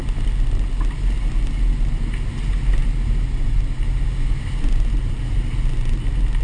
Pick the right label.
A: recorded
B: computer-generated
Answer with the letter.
A